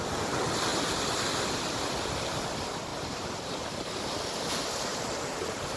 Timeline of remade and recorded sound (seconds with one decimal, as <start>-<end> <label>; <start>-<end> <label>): 0.0-2.9 recorded; 2.9-4.0 remade; 4.0-4.9 recorded; 4.9-5.8 remade